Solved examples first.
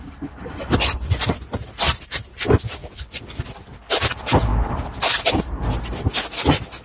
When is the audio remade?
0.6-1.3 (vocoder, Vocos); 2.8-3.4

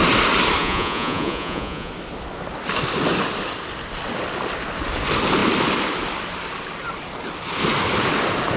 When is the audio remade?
0.6-1.9 (vocoder, Vocos)

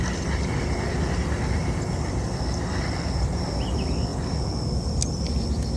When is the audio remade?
1.6-3.3 (vocoder, BigVGAN v2); 4.1-5.0

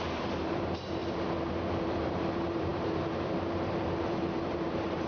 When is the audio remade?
0.0-1.0 (vocoder, BigVGAN v2); 1.8-5.1

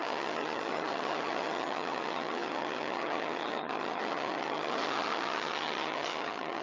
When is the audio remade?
0.0-6.6 (vocoder, HiFi-GAN)

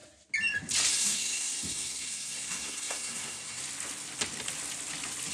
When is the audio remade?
0.9-3.6 (codec, SNAC)

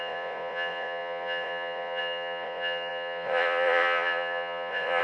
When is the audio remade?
0.0-5.0 (vocoder, Vocos)